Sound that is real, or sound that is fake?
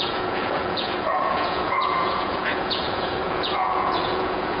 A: fake